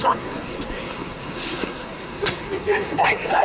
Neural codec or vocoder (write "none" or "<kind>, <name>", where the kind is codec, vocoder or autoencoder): codec, SNAC